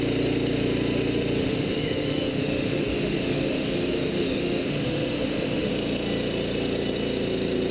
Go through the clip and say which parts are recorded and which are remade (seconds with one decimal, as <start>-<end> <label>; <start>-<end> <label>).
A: 0.0-1.4 recorded; 1.4-5.7 remade; 5.7-7.7 recorded